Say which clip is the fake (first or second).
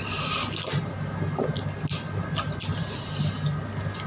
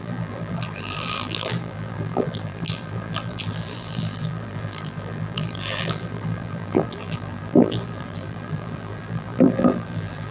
second